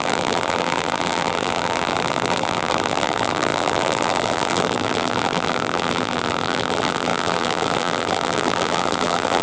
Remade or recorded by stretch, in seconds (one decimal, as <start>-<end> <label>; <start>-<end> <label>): 0.0-9.4 remade